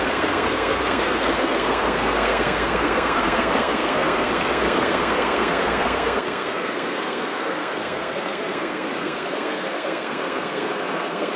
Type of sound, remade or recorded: remade